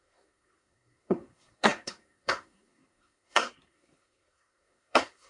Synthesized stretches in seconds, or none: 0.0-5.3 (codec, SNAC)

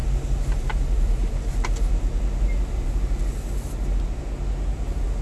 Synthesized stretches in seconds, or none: none

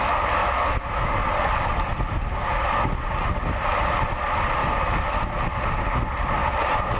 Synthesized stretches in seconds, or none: 0.4-1.1 (autoencoder, DAC-VAE)

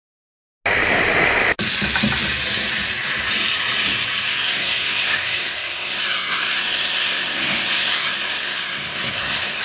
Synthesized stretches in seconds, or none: 4.3-9.6 (codec, SNAC)

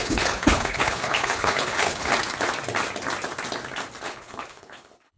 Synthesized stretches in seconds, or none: 0.0-2.1 (codec, HILCodec); 4.0-5.2